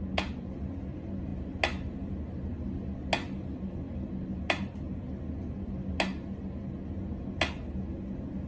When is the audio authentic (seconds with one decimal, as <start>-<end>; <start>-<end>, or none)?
0.0-8.5